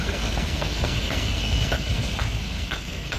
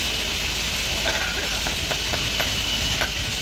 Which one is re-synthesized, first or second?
first